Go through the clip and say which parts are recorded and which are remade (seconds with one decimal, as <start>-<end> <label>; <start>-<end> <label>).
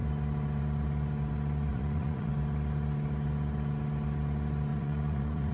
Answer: 0.0-1.7 recorded; 1.7-2.3 remade; 2.3-4.7 recorded; 4.7-5.5 remade